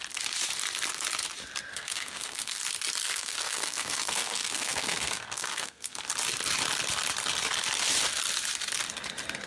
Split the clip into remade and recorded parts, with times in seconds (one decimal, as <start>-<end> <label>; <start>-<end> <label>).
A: 0.0-1.7 recorded; 1.7-2.6 remade; 2.6-3.0 recorded; 3.0-6.0 remade; 6.0-9.5 recorded